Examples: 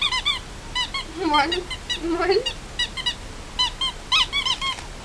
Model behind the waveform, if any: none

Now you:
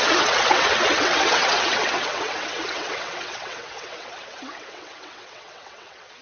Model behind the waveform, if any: vocoder, WaveNeXt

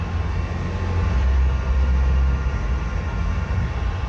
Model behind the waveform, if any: none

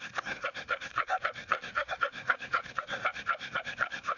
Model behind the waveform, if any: codec, SNAC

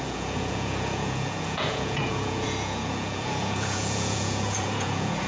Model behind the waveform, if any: vocoder, Vocos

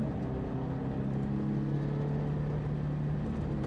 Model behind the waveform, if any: none